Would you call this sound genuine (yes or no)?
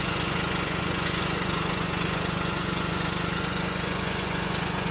no